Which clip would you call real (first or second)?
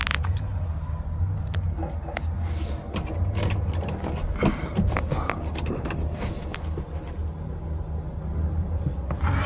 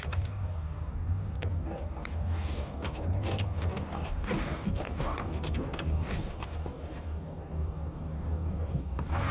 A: first